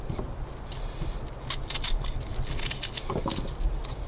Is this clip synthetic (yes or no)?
no